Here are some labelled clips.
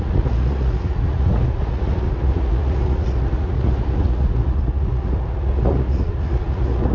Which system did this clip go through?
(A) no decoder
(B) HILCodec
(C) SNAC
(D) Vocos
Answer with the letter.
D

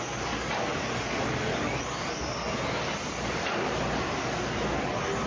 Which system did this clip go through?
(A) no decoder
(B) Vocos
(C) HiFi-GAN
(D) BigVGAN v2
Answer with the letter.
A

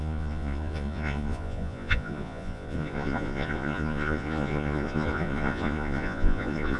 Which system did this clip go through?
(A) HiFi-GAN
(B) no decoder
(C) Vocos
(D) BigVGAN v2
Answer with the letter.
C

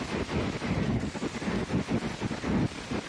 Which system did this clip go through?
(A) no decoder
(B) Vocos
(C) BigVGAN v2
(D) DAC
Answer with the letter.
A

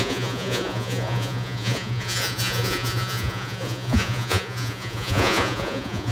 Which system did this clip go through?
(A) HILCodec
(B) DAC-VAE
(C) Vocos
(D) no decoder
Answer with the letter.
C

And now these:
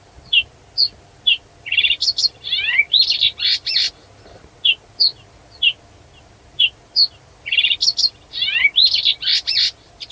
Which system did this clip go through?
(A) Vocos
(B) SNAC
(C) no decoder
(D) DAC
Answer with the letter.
C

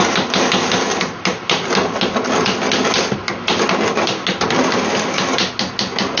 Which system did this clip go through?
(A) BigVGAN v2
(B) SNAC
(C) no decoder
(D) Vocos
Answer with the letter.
C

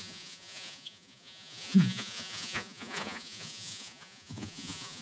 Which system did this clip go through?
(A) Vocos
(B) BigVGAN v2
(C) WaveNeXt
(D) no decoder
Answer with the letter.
A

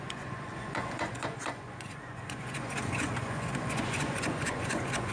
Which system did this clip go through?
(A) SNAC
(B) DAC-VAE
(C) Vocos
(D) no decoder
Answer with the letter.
C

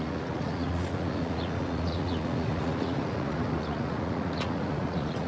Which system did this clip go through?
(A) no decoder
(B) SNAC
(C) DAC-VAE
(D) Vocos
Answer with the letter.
D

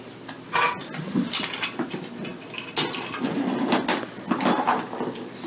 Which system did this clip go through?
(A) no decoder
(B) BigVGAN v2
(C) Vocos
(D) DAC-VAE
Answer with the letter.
A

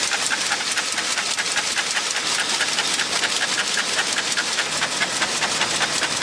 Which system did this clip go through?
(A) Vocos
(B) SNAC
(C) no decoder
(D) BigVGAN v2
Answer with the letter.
C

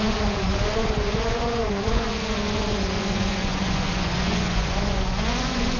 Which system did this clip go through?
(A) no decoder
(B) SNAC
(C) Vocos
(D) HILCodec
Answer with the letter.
C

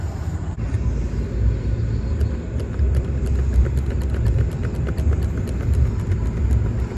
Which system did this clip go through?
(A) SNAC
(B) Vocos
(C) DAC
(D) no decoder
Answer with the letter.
D